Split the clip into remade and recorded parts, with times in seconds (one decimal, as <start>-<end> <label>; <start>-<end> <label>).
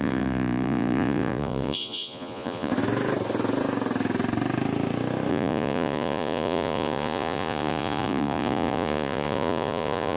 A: 0.0-2.7 remade; 2.7-5.3 recorded; 5.3-10.2 remade